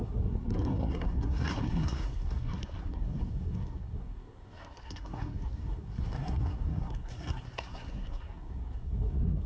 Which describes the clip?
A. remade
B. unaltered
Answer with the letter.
A